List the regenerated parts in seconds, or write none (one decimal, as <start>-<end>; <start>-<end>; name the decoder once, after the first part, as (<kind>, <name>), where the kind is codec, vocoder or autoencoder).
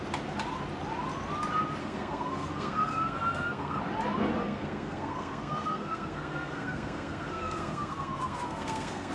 1.8-3.8 (codec, SNAC); 4.4-9.1